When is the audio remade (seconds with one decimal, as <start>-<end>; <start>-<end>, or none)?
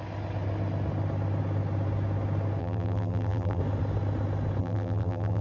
2.6-3.6; 4.6-5.4